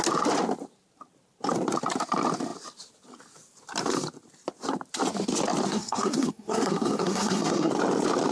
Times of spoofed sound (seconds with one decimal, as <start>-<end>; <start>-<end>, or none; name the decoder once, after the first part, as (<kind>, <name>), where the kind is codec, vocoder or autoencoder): 5.7-7.7 (codec, SNAC)